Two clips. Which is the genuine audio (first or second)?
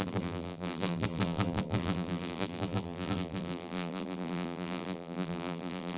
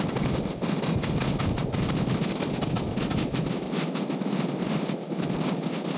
second